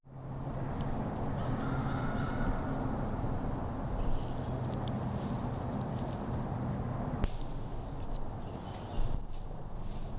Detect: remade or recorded recorded